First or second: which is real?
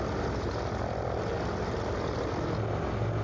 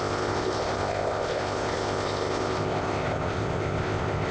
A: first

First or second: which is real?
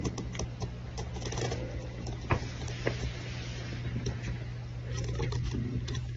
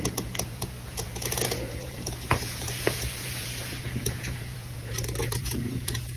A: first